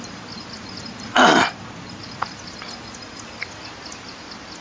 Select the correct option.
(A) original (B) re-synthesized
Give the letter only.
A